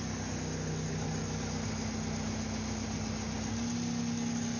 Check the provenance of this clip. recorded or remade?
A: recorded